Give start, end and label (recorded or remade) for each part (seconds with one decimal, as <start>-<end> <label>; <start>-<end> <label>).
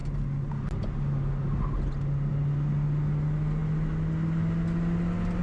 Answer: 0.0-5.4 recorded